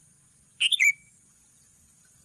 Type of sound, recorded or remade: remade